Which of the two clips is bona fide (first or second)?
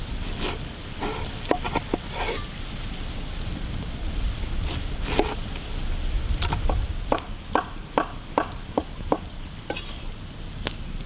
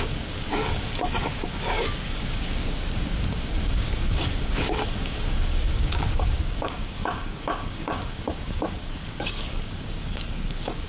first